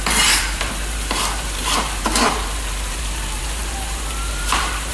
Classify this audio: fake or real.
fake